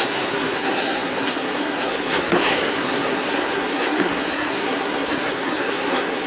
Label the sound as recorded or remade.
remade